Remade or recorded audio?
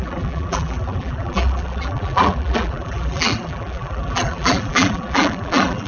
remade